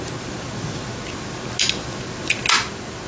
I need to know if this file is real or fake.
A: real